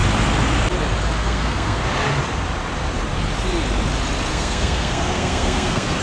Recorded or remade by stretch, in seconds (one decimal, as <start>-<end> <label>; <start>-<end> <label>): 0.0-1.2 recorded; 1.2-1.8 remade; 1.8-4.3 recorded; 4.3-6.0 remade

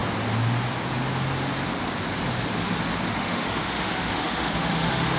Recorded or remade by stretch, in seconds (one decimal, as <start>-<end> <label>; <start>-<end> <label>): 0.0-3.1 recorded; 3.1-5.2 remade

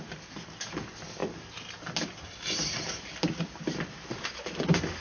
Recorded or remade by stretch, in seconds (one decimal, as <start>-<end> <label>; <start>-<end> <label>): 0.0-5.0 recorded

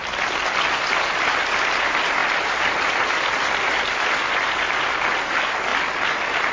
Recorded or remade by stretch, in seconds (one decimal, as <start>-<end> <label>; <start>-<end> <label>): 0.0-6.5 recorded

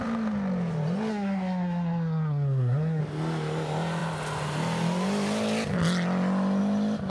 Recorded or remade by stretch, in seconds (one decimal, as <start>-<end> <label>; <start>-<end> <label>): 0.0-1.1 recorded; 1.1-3.0 remade; 3.0-7.1 recorded

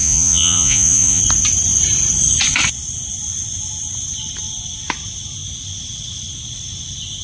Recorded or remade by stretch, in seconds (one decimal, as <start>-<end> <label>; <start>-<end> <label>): 0.0-1.2 remade; 1.2-7.2 recorded

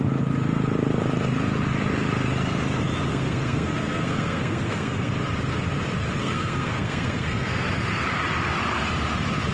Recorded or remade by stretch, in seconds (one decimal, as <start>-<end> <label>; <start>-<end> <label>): 0.0-3.1 recorded; 3.1-5.1 remade; 5.1-6.2 recorded; 6.2-7.7 remade; 7.7-9.5 recorded

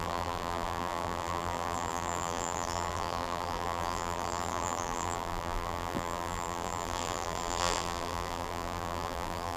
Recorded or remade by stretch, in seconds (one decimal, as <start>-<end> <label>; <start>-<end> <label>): 0.0-9.6 remade